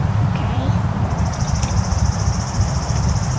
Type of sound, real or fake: fake